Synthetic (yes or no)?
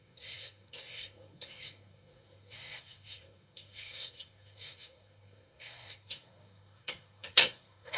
yes